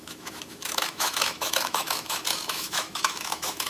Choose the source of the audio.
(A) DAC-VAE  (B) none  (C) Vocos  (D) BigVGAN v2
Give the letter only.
A